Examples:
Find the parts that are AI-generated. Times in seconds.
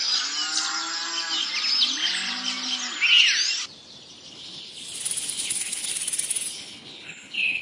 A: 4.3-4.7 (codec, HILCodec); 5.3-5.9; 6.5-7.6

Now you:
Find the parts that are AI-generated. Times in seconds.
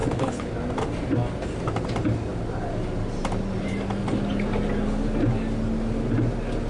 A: 0.0-0.5 (codec, HILCodec)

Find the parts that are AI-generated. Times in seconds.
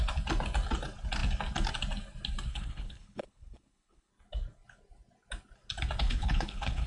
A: 2.5-4.1 (codec, HILCodec); 6.0-6.9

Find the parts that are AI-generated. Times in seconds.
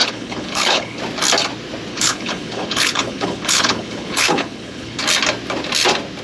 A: 0.0-1.0 (codec, HILCodec); 1.9-5.0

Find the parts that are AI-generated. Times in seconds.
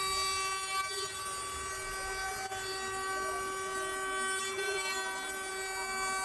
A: none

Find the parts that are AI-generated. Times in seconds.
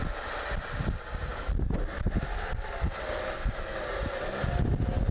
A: none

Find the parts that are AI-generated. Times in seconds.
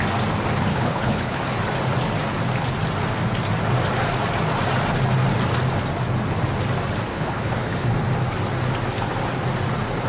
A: 0.7-1.4 (codec, HILCodec); 7.1-7.9